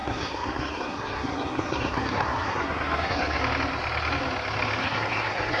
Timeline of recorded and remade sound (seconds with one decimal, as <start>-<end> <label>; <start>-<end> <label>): 0.0-3.4 remade; 3.4-4.8 recorded; 4.8-5.6 remade